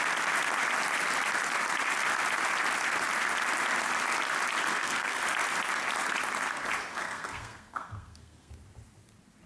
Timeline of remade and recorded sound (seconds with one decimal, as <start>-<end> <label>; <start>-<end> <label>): 0.0-4.7 recorded; 4.7-5.2 remade; 5.2-6.9 recorded; 6.9-8.5 remade; 8.5-9.5 recorded